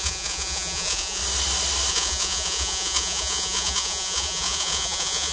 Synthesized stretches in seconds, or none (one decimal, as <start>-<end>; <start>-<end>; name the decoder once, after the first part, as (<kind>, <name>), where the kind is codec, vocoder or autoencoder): 0.0-1.2 (vocoder, Vocos); 1.9-5.3